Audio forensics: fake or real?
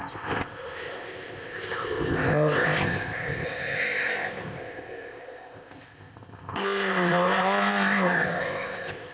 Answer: fake